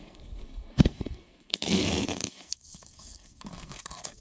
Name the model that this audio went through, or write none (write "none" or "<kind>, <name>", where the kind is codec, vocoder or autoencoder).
codec, SNAC